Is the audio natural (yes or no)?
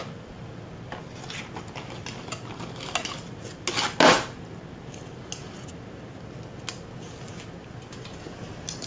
yes